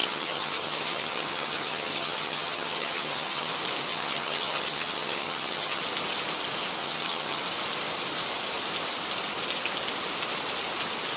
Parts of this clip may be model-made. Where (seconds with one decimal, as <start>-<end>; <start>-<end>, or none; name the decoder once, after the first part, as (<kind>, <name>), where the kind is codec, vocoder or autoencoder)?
0.0-3.5 (vocoder, HiFi-GAN); 3.9-5.8; 6.8-7.4